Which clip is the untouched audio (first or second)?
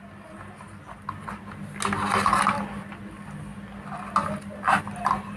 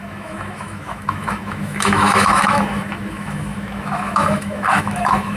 first